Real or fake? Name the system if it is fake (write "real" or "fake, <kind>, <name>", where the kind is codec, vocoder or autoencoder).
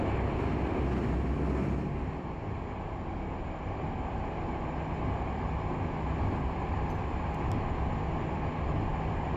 real